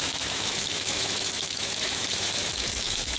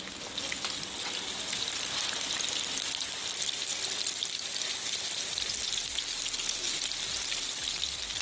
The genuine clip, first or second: second